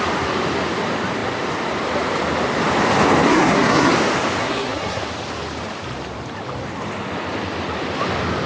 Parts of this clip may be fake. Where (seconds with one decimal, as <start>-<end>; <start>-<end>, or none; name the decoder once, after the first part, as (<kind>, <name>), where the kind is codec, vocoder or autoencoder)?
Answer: 3.3-3.9 (codec, SNAC); 4.4-5.0